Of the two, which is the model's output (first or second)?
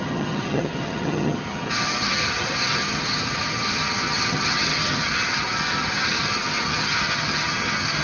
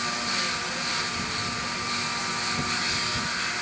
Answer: first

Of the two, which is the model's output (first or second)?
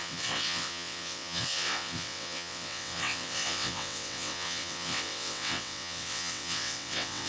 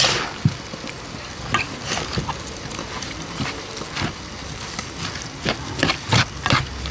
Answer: first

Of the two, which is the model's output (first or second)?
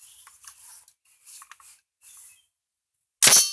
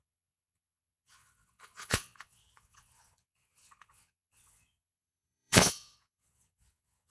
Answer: second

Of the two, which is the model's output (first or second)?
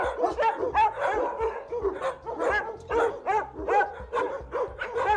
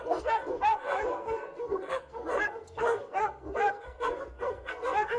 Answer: second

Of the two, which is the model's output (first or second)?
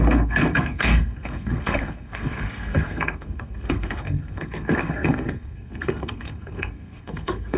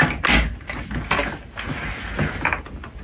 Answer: first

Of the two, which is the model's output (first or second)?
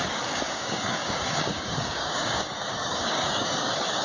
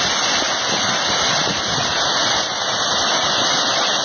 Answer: first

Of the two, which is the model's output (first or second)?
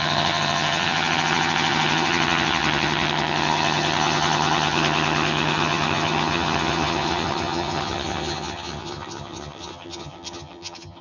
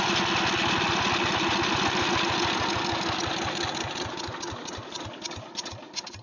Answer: first